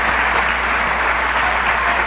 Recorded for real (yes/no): yes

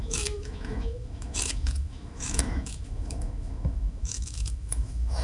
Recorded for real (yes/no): no